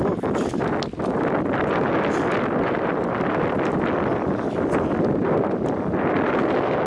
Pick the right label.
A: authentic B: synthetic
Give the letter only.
A